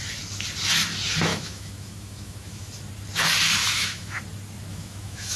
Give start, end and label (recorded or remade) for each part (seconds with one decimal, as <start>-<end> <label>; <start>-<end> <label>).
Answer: 0.0-1.3 recorded; 1.3-2.7 remade; 2.7-3.6 recorded; 3.6-4.2 remade; 4.2-4.7 recorded; 4.7-5.4 remade